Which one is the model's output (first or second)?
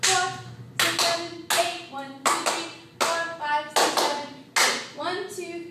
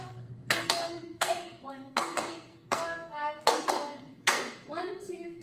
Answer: second